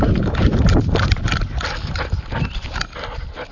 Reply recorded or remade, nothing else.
recorded